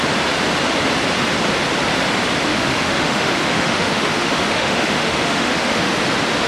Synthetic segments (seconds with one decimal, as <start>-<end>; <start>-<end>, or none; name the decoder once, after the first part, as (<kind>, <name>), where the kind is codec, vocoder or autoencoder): 2.5-5.9 (autoencoder, DAC-VAE)